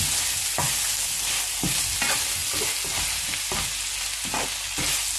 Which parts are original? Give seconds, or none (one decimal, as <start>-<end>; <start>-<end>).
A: 0.0-5.2